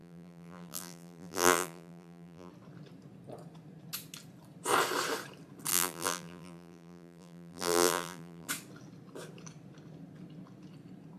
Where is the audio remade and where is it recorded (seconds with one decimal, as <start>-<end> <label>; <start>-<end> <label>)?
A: 0.0-2.5 remade; 2.5-5.7 recorded; 5.7-8.5 remade; 8.5-11.2 recorded